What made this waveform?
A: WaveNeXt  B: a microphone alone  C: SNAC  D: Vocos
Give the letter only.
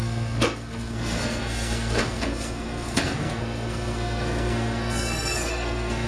C